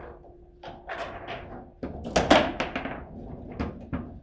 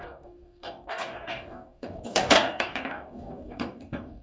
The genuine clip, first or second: first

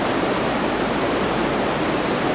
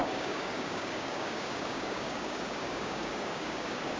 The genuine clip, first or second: first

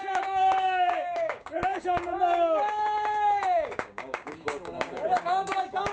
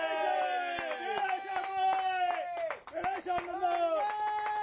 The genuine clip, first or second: second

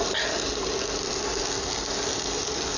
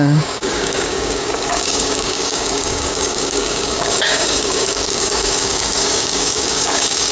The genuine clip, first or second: first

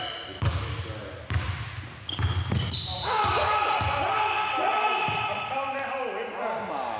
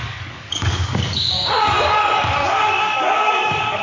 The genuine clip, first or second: first